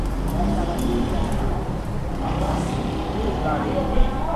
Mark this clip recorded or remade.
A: recorded